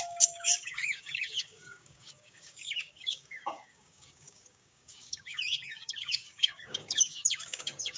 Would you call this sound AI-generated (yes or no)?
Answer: yes